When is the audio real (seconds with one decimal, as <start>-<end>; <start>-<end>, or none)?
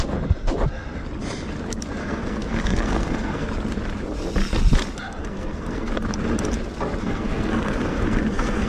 0.0-2.0; 3.5-5.2; 5.9-7.0